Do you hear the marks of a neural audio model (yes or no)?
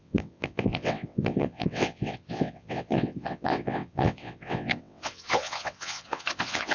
yes